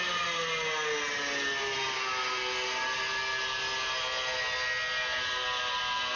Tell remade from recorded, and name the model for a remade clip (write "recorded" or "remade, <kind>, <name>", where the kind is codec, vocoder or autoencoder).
recorded